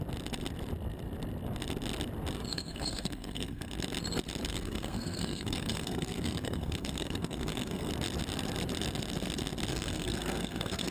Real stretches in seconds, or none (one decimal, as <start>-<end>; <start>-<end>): 0.0-2.5; 3.7-4.5; 7.9-9.7